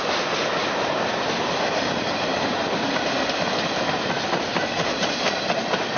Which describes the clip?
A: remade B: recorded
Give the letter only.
B